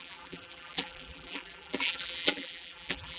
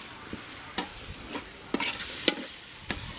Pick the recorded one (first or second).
second